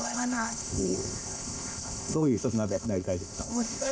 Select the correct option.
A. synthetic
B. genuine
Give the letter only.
A